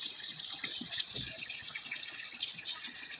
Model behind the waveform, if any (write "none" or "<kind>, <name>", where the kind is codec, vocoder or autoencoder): vocoder, Vocos